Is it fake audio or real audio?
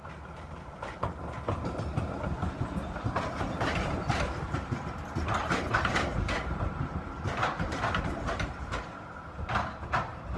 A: fake